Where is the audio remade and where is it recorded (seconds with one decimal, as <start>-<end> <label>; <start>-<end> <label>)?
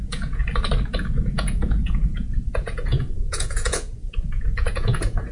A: 0.0-0.4 remade; 0.4-0.9 recorded; 0.9-5.3 remade